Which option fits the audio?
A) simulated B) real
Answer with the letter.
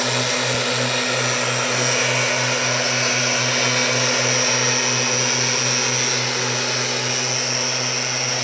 B